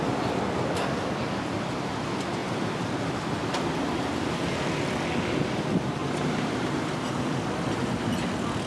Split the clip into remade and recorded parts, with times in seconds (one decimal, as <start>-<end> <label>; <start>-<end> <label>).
0.0-6.0 recorded; 6.0-6.8 remade; 6.8-8.7 recorded